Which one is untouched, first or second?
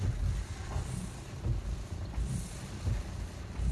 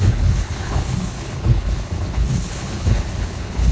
first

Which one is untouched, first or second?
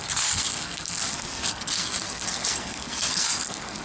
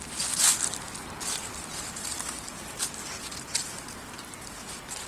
second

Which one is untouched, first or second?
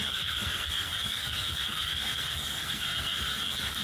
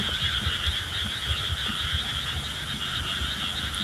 second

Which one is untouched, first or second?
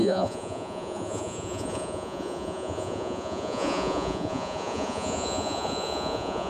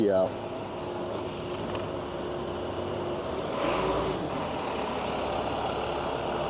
second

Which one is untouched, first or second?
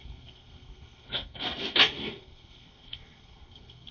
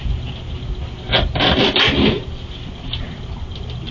second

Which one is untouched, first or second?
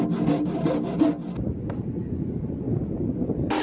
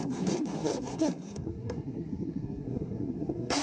first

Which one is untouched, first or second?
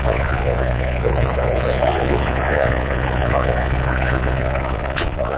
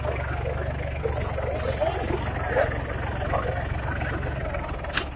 second